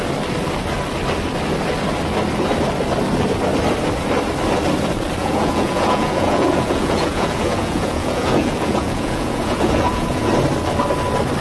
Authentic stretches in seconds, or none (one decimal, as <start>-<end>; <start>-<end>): 0.0-5.2; 10.3-11.4